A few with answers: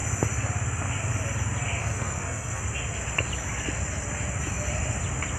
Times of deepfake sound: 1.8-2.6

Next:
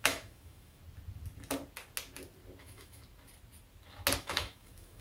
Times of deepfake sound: 0.0-0.8; 2.6-3.0; 4.2-5.0

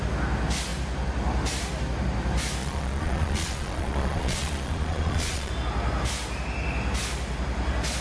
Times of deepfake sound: 2.6-5.5

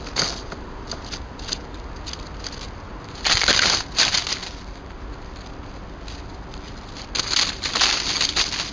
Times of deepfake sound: none

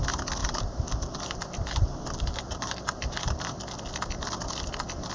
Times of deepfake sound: 0.4-3.5

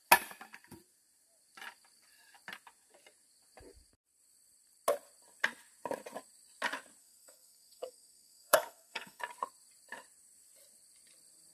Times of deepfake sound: 7.0-9.2

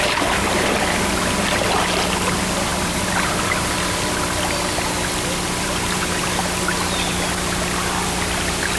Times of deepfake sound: 2.7-3.7